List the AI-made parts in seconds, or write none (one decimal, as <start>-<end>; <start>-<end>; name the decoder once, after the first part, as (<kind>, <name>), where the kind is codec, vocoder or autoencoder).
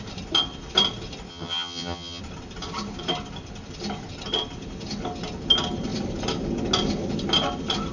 1.3-2.2 (vocoder, HiFi-GAN)